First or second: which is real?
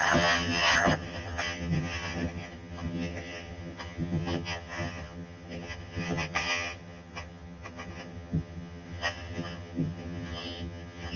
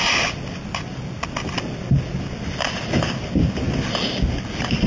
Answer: second